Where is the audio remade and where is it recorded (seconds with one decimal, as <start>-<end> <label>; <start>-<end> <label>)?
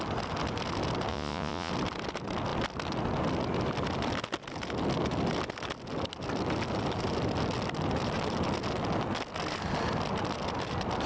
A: 0.0-1.1 recorded; 1.1-1.7 remade; 1.7-11.1 recorded